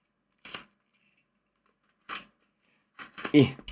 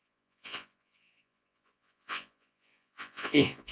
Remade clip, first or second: second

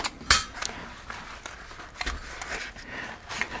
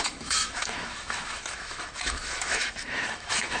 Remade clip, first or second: second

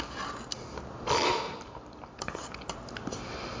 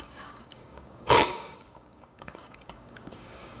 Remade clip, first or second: second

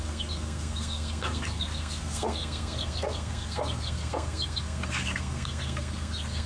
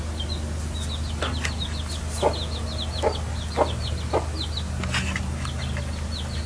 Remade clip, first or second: first